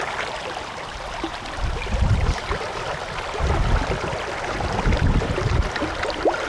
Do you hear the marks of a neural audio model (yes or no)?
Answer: yes